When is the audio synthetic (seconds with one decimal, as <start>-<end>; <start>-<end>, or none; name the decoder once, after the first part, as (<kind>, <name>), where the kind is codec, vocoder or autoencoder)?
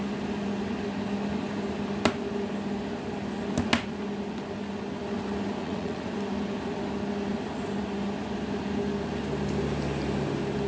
5.6-6.1 (vocoder, Vocos)